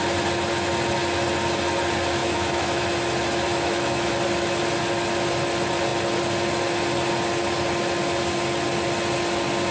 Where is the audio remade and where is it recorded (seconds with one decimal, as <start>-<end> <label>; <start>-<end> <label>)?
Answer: 0.0-2.2 recorded; 2.2-2.8 remade; 2.8-3.5 recorded; 3.5-4.1 remade; 4.1-9.7 recorded